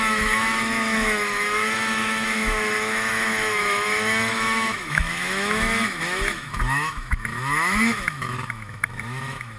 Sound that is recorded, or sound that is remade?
remade